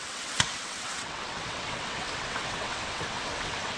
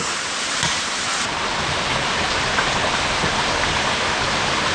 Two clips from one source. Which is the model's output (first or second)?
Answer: first